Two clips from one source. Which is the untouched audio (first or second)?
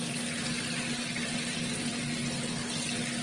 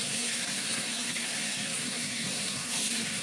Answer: first